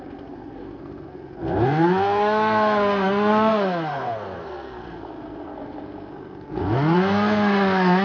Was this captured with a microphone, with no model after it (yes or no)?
no